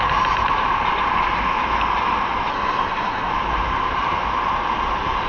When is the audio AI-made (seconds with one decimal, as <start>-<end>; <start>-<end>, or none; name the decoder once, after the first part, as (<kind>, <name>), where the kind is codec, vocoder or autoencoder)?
2.5-3.3 (codec, SNAC)